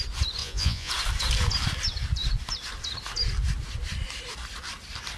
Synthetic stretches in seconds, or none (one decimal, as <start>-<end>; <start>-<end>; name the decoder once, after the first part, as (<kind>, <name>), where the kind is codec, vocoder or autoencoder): 0.4-0.9 (vocoder, Vocos)